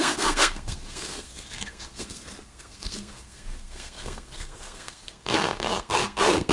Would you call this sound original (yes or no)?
no